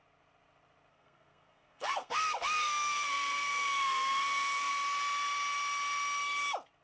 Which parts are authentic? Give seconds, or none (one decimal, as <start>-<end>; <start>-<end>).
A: 0.0-0.9; 4.7-6.8